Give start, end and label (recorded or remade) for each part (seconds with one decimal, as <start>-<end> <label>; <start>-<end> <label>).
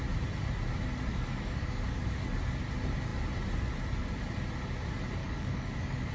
0.0-1.1 recorded; 1.1-2.2 remade; 2.2-5.2 recorded; 5.2-6.1 remade